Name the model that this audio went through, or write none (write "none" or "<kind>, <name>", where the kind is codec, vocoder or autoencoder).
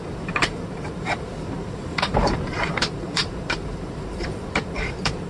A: vocoder, BigVGAN v2